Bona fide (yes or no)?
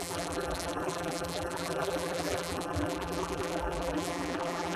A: no